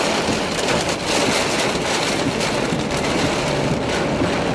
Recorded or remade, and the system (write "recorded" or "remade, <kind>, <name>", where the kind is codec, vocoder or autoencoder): recorded